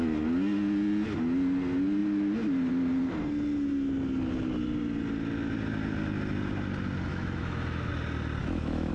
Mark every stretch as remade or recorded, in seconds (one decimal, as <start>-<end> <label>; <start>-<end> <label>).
0.0-7.1 recorded; 7.1-7.9 remade; 7.9-8.4 recorded; 8.4-8.9 remade